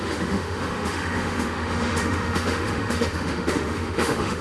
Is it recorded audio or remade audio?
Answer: remade